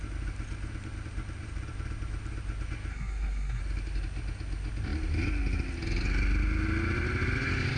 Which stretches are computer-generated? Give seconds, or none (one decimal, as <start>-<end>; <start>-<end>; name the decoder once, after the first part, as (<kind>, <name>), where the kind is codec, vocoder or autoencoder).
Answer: 2.9-3.6 (codec, SNAC)